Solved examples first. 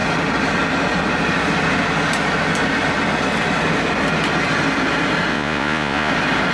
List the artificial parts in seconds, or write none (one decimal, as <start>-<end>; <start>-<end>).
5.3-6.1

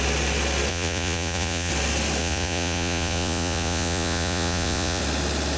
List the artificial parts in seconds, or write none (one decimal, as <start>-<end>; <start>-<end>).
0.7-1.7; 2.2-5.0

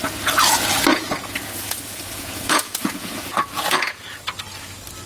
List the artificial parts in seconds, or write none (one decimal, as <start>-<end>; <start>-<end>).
0.9-4.0